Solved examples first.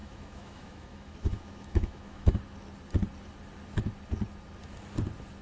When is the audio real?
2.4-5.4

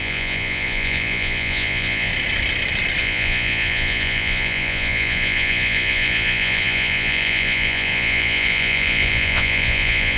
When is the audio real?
2.1-3.0

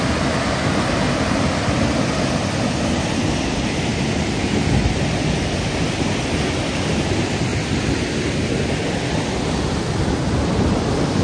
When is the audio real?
0.0-11.2

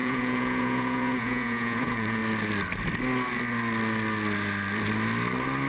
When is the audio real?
2.2-5.7

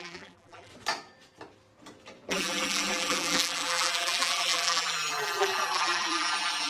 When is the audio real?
0.7-2.3

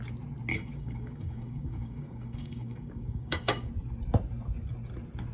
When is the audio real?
0.0-0.5; 3.7-5.3

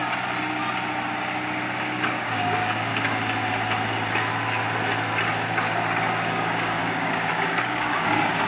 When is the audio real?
0.0-1.8; 2.9-6.3